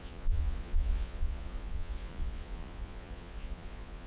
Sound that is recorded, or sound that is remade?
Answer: remade